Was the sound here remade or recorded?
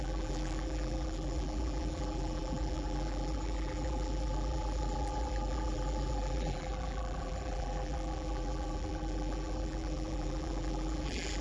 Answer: remade